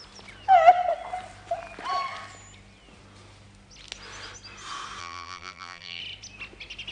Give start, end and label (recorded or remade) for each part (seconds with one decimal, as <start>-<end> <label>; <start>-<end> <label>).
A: 0.0-5.0 recorded; 5.0-6.0 remade; 6.0-6.9 recorded